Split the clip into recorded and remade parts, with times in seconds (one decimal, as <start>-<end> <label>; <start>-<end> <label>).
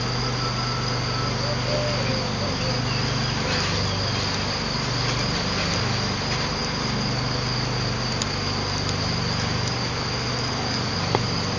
0.0-11.6 recorded